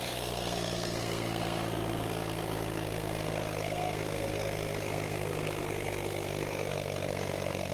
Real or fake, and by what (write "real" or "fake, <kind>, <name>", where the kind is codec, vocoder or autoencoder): fake, codec, SNAC